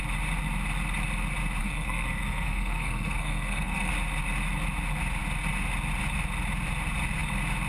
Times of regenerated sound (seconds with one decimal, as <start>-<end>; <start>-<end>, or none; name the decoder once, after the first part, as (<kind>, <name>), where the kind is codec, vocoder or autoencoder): 1.6-3.9 (codec, SNAC)